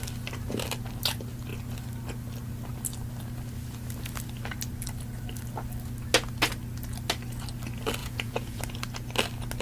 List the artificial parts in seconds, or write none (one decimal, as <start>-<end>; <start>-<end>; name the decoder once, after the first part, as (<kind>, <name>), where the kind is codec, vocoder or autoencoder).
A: 8.0-8.6 (vocoder, Vocos)